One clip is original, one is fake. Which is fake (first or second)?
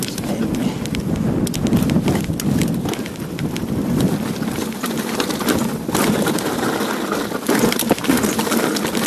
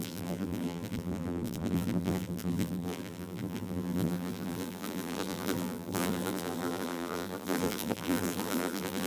second